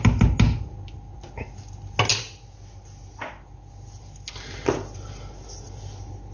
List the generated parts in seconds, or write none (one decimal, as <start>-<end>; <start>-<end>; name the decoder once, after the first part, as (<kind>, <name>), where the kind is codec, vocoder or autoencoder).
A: none